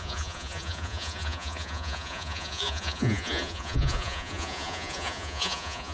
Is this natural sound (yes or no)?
no